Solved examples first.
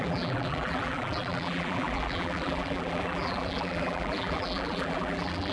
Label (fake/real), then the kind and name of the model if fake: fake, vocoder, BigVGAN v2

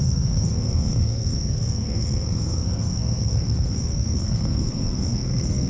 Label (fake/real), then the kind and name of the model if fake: fake, codec, SNAC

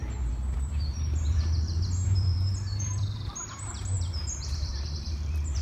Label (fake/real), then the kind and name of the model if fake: fake, vocoder, BigVGAN v2